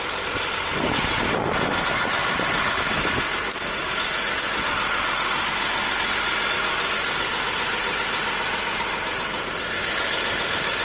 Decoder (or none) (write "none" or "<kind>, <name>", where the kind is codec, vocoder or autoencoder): none